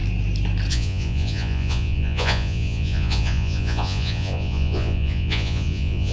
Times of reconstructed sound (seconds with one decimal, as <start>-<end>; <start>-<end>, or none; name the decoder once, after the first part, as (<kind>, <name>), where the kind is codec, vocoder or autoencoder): 0.7-6.1 (vocoder, Vocos)